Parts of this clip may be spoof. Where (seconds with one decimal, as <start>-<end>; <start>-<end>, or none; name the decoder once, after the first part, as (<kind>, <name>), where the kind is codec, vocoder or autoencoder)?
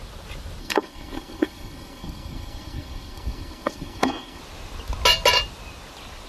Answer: 0.6-4.4 (codec, SNAC)